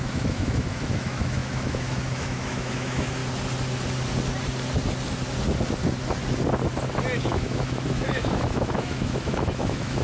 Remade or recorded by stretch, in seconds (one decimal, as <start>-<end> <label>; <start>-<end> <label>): 0.0-3.2 remade; 3.2-7.2 recorded; 7.2-10.0 remade